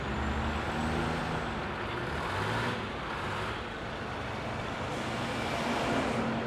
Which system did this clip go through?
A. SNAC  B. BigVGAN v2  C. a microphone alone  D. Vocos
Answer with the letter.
C